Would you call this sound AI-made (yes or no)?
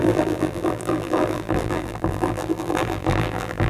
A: yes